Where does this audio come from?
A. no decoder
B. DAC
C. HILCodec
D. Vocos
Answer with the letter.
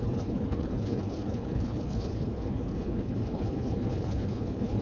C